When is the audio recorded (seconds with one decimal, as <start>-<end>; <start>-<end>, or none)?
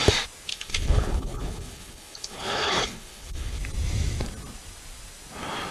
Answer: 0.0-0.5; 3.6-5.7